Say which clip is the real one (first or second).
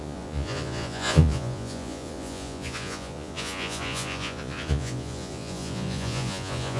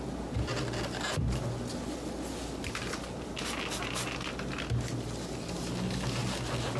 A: second